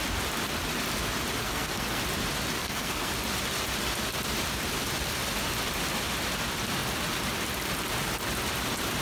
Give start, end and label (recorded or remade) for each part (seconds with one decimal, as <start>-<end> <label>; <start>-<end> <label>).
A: 0.0-1.4 recorded; 1.4-2.0 remade; 2.0-2.6 recorded; 2.6-3.1 remade; 3.1-9.0 recorded